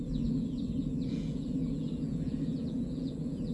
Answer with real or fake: fake